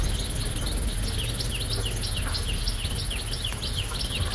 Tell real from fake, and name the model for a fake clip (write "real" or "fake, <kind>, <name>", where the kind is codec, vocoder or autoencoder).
real